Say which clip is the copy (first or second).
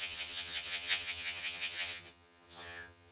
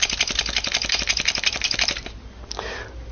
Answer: first